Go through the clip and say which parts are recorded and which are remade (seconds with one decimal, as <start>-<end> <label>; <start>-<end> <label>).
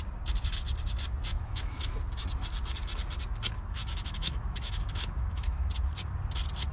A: 0.0-1.3 recorded; 1.3-1.9 remade; 1.9-3.8 recorded; 3.8-5.7 remade; 5.7-6.7 recorded